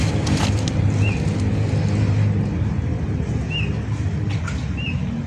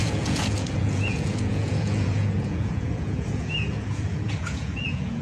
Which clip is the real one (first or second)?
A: first